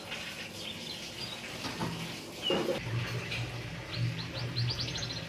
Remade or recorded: recorded